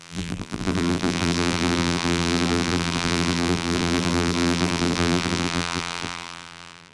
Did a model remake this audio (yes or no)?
yes